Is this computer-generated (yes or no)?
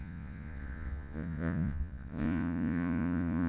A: yes